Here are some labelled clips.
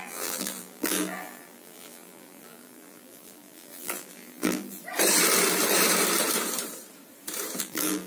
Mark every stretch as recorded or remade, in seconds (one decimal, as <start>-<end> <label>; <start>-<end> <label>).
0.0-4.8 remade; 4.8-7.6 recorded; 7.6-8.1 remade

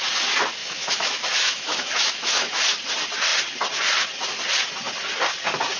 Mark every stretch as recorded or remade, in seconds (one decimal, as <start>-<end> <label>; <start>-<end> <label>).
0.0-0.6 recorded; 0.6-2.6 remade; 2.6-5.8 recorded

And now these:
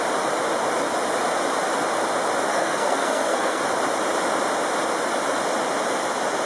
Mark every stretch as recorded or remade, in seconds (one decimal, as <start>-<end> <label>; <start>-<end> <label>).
0.0-2.5 recorded; 2.5-3.6 remade; 3.6-6.5 recorded